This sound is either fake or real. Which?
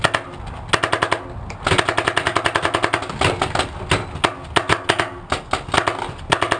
real